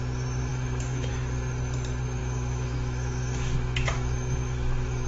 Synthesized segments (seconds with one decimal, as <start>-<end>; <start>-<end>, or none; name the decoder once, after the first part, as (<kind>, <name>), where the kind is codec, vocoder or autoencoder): 0.5-1.1 (autoencoder, DAC-VAE); 2.2-5.1